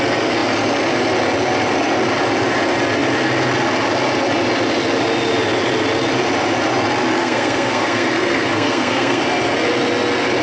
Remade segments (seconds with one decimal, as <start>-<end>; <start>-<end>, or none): 7.2-9.2